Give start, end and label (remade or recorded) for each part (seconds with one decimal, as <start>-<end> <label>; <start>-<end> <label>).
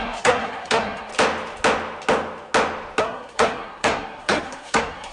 0.0-1.1 remade; 1.1-3.0 recorded; 3.0-5.1 remade